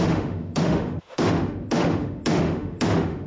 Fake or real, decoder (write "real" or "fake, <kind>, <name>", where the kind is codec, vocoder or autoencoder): fake, autoencoder, DAC-VAE